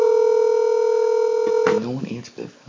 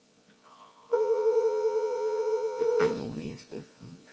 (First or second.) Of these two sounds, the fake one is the second